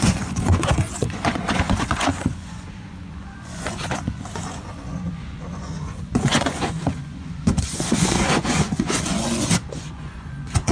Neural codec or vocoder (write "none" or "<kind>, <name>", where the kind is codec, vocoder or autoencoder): vocoder, Vocos